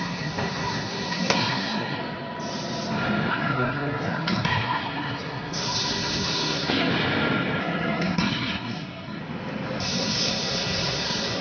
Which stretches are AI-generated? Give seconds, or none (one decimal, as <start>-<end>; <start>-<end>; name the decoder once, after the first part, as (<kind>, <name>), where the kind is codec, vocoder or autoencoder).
0.0-2.0 (codec, SNAC); 3.3-6.9; 7.6-9.2; 9.8-11.4